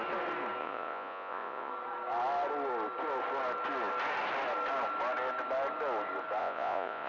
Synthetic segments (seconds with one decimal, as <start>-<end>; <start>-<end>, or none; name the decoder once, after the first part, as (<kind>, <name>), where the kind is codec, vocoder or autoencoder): 0.6-1.7 (vocoder, Vocos); 6.4-7.1